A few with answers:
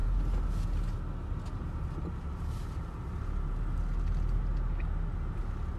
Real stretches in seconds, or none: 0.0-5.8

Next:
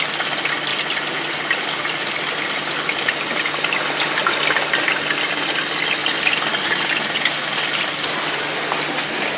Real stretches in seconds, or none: 0.0-9.4

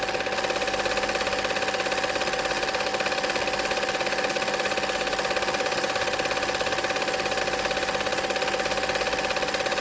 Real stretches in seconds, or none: 0.0-9.8

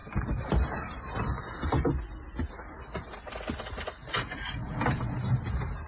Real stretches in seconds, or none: 0.0-5.9

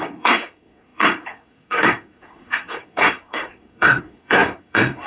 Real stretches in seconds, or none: none

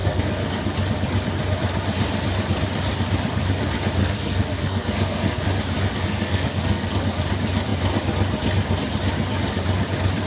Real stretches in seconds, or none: 0.6-4.0; 5.4-5.9; 6.9-10.3

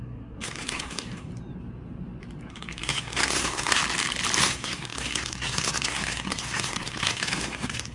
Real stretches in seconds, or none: 1.3-2.5; 3.8-4.4

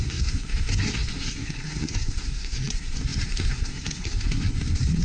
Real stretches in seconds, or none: none